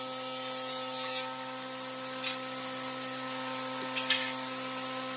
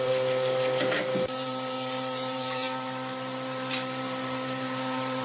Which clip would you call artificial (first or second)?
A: second